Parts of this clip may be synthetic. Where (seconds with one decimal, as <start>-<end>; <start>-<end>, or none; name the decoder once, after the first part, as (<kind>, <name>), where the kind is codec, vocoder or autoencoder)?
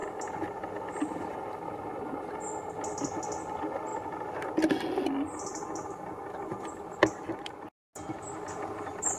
none